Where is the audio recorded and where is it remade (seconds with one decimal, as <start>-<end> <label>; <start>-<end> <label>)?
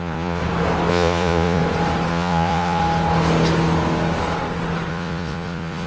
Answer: 0.0-0.4 remade; 0.4-0.9 recorded; 0.9-1.6 remade; 1.6-2.1 recorded; 2.1-2.8 remade; 2.8-4.9 recorded; 4.9-5.9 remade